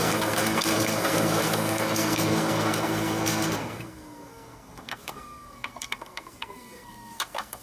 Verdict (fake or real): fake